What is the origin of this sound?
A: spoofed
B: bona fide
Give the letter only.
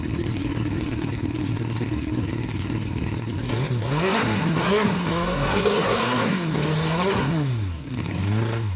A